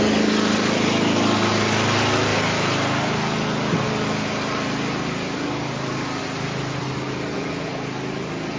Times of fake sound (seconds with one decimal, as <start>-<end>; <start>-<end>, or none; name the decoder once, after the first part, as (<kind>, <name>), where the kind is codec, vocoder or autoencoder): none